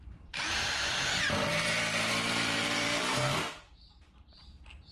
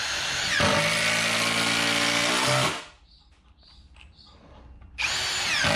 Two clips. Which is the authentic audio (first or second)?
second